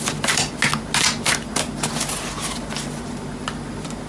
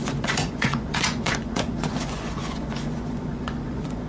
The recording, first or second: first